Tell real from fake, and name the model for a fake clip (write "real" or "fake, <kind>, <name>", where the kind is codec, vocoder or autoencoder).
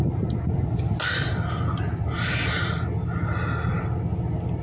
real